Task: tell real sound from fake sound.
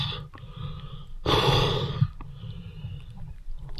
fake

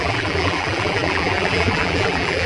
fake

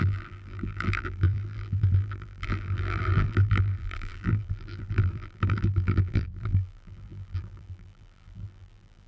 fake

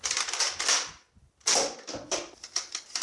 real